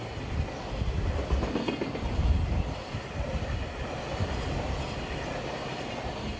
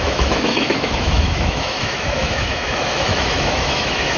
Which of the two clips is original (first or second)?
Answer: first